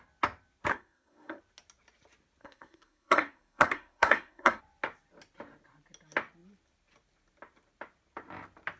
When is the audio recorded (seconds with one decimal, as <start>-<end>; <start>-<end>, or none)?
0.0-0.7; 1.4-2.4; 4.6-8.8